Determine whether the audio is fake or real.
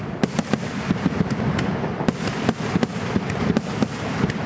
real